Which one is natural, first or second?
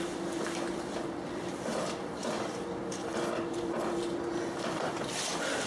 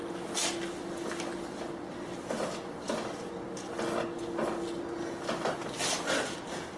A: second